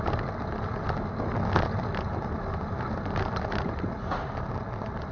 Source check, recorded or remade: recorded